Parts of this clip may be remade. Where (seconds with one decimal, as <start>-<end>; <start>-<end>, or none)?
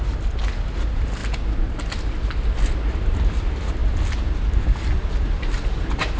none